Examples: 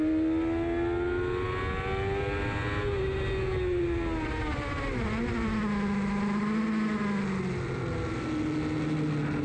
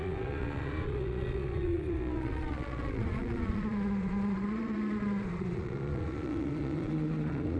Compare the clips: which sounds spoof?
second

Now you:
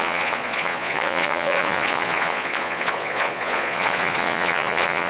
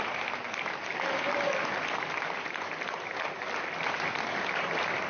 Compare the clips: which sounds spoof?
first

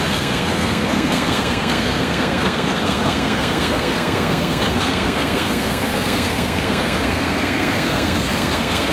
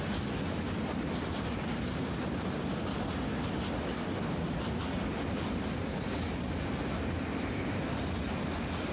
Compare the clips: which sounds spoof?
first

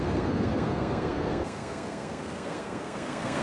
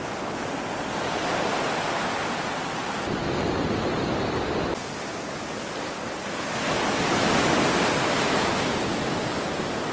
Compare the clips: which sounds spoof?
first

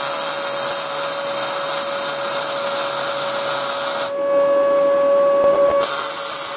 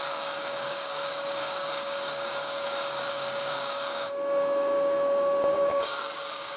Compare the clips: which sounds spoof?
second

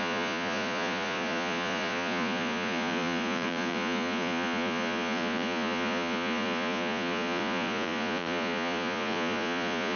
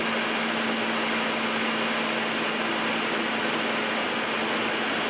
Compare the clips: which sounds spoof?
first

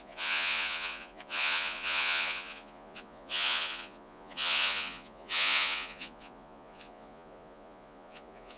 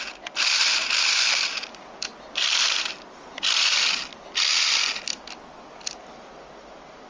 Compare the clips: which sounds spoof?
first